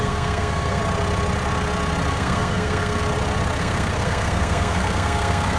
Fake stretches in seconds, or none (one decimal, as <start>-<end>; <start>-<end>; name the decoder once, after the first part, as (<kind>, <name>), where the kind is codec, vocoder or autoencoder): 0.0-0.8 (codec, SNAC); 2.1-3.0; 3.6-5.6